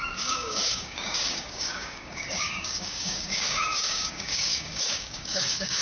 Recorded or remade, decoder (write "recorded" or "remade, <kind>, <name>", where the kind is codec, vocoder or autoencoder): remade, codec, DAC